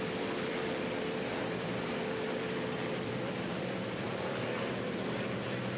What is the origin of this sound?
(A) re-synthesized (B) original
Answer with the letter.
A